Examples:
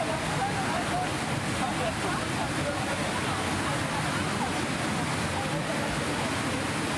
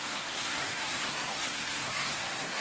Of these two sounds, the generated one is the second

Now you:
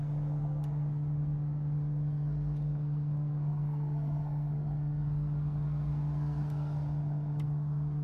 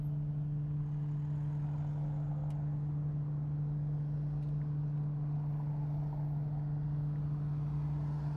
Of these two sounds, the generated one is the first